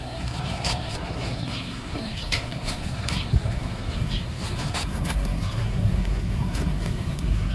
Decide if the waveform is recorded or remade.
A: remade